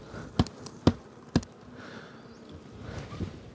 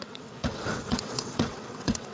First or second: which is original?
first